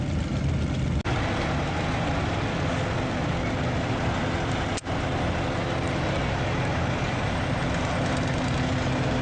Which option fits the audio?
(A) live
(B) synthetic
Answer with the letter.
A